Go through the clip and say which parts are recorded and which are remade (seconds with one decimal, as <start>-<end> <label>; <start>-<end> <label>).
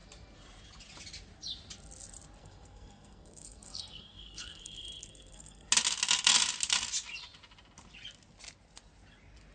0.0-2.4 recorded; 2.4-5.7 remade; 5.7-9.5 recorded